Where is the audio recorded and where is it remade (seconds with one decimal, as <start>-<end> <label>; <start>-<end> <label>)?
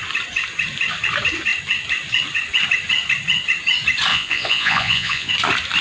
0.0-4.1 recorded; 4.1-5.3 remade; 5.3-5.8 recorded